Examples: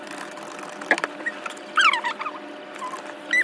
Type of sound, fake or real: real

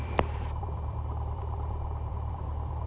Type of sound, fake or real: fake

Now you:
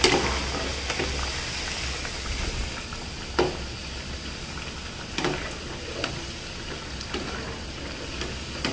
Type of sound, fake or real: real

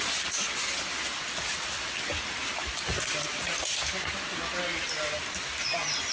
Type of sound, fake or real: real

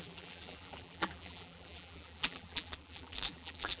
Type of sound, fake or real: fake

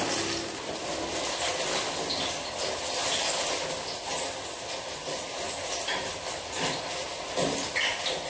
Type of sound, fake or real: real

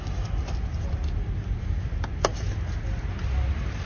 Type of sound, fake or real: real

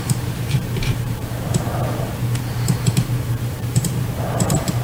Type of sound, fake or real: fake